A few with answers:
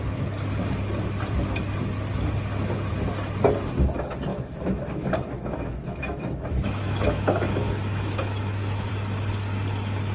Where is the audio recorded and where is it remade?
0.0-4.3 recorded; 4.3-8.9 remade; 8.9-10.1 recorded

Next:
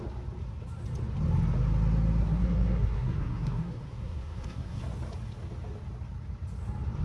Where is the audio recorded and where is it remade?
0.0-2.2 recorded; 2.2-4.8 remade; 4.8-7.0 recorded

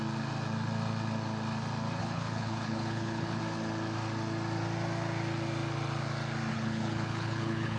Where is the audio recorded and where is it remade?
0.0-2.0 recorded; 2.0-3.4 remade; 3.4-6.5 recorded; 6.5-7.8 remade

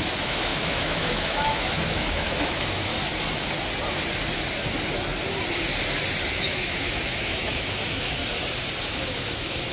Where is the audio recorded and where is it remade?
0.0-2.9 remade; 2.9-6.3 recorded; 6.3-8.2 remade; 8.2-8.8 recorded; 8.8-9.7 remade

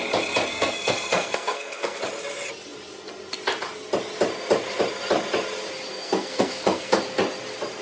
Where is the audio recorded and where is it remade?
0.0-0.5 recorded; 0.5-2.0 remade; 2.0-5.9 recorded; 5.9-7.0 remade; 7.0-7.8 recorded